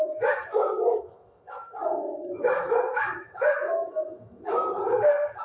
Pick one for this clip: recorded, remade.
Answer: remade